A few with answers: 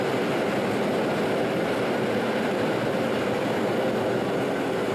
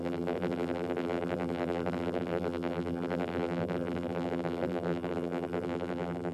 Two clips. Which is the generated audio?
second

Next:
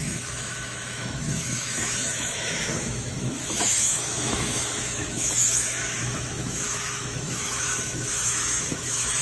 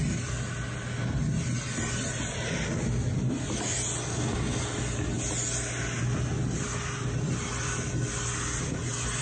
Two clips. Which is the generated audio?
first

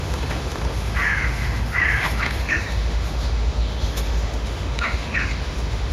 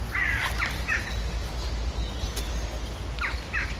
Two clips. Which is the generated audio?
first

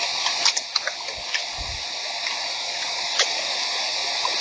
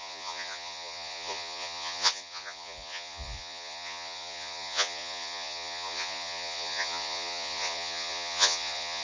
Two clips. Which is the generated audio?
second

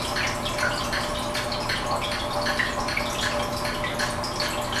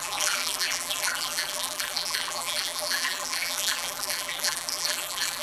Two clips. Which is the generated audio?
second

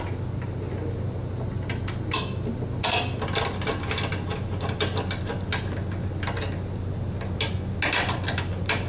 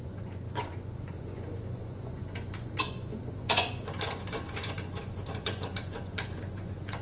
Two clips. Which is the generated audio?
second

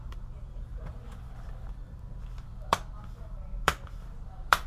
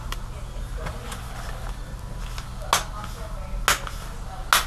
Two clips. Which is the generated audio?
first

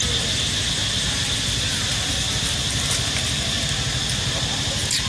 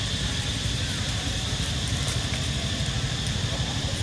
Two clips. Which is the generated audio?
second